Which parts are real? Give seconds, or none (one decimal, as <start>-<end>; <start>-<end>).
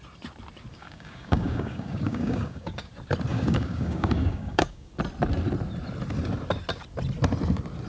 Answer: 0.0-0.7; 2.9-3.3; 4.9-7.9